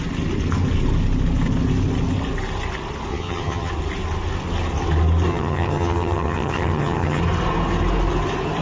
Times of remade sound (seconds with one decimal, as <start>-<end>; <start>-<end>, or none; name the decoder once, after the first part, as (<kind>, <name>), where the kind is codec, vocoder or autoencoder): 3.1-3.7 (vocoder, HiFi-GAN); 5.3-7.2